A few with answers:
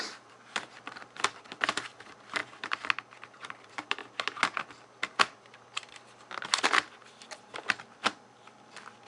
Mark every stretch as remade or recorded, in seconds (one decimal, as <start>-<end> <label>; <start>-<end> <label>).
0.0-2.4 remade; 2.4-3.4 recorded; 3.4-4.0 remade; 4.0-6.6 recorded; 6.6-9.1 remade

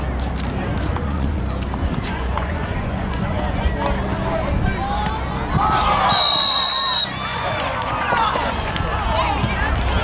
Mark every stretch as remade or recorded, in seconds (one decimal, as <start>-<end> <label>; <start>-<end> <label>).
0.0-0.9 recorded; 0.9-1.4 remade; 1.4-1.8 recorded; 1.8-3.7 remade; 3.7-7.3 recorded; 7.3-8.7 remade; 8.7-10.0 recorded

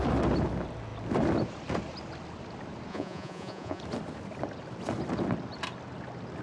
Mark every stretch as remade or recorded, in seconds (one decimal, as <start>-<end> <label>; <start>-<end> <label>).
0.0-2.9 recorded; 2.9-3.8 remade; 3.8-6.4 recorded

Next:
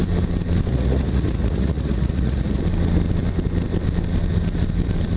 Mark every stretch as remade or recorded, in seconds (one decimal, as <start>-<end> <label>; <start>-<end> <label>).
0.0-0.7 recorded; 0.7-2.6 remade; 2.6-5.2 recorded

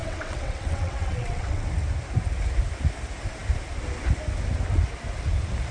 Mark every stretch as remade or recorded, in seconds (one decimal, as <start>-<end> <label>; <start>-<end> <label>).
0.0-1.7 remade; 1.7-5.7 recorded